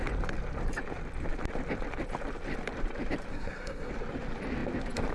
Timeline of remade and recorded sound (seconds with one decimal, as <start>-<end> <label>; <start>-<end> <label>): 0.0-3.3 recorded; 3.3-3.9 remade; 3.9-5.1 recorded